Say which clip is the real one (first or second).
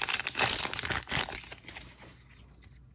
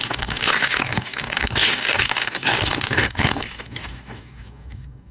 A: first